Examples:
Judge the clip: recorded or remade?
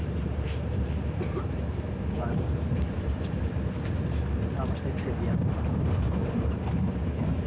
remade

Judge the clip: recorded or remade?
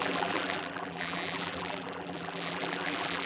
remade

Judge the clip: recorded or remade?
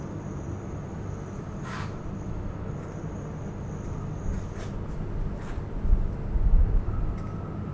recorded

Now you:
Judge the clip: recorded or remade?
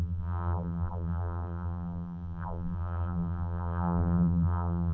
remade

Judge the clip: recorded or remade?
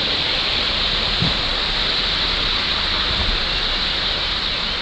remade